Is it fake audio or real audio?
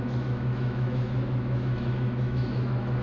fake